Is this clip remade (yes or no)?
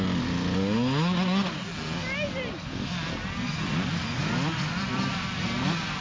no